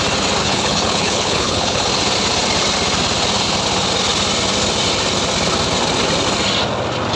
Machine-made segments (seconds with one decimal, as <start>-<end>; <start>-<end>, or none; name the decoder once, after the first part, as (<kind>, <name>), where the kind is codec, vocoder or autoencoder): 0.4-1.9 (codec, HILCodec)